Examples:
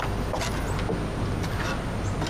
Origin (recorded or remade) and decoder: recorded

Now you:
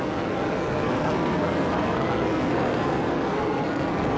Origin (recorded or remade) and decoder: remade, codec, SNAC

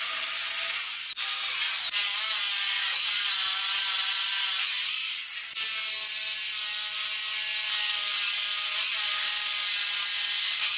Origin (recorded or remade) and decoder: recorded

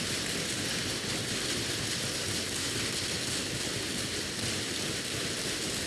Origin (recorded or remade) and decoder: recorded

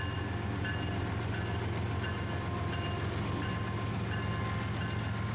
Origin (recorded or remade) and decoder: recorded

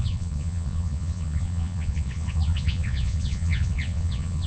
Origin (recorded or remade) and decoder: remade, vocoder, Vocos